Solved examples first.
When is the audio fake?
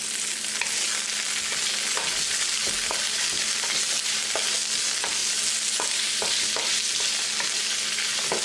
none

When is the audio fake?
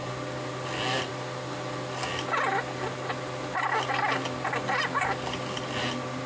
none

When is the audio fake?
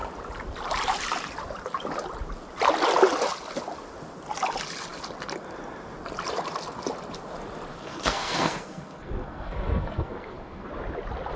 7.7-10.7 (codec, SNAC)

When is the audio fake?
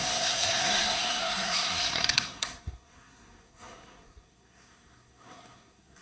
0.0-6.0 (codec, SNAC)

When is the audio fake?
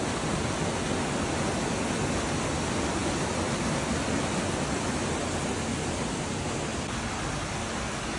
none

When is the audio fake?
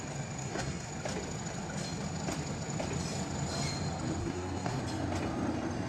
0.4-0.9 (codec, SNAC); 4.2-4.8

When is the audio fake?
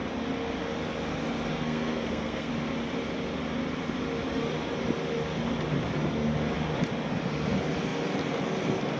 1.5-2.5 (codec, SNAC)